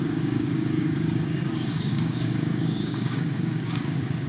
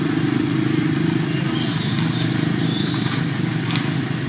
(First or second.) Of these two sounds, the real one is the second